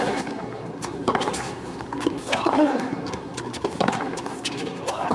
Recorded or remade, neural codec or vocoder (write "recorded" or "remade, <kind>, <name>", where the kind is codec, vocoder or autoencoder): remade, codec, SNAC